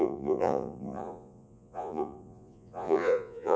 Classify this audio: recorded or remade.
remade